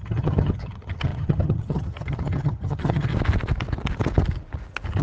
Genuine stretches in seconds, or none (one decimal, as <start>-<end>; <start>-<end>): 3.1-5.0